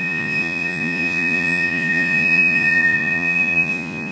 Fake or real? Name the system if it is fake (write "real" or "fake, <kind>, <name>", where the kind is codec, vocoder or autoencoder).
fake, vocoder, Vocos